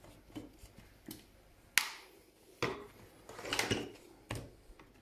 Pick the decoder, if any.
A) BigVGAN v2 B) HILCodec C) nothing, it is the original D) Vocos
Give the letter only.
C